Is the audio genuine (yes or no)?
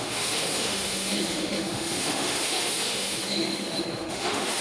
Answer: no